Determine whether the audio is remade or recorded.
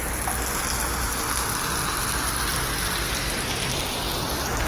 recorded